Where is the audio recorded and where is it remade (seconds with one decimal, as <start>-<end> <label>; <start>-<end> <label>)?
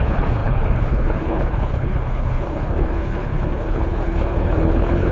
0.0-5.1 remade